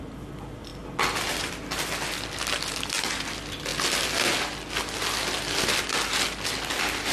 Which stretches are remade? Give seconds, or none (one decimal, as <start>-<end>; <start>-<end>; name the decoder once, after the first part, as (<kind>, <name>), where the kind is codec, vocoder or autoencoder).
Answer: none

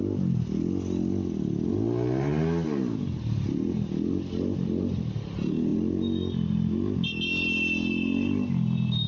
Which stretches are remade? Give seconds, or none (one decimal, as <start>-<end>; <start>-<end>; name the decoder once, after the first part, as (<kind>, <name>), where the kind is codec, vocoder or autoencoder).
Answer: none

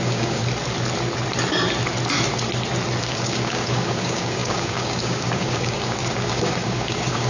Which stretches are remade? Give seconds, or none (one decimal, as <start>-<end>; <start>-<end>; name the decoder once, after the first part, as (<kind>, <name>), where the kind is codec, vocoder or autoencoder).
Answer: 0.0-0.4 (codec, DAC); 3.0-7.3

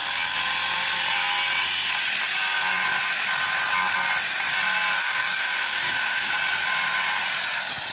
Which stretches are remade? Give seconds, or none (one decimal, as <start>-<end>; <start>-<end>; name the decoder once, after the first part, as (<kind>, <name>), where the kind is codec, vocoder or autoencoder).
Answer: 5.0-6.3 (codec, DAC)

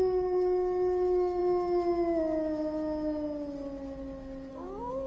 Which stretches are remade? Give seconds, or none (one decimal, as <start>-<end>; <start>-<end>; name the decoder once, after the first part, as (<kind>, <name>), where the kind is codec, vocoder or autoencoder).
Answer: 0.0-1.4 (codec, DAC); 4.5-5.1

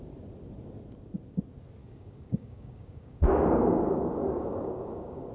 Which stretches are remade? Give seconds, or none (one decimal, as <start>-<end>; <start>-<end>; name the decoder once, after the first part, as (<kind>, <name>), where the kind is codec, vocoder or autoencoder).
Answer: 1.8-5.3 (codec, DAC)

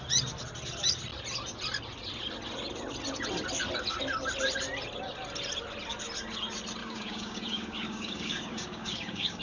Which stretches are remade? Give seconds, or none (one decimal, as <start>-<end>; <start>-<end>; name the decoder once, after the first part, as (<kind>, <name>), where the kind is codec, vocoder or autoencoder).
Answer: 6.8-9.4 (codec, DAC)